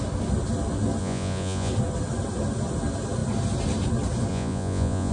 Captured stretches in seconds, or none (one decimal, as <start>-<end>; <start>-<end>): 0.0-1.0; 1.7-4.3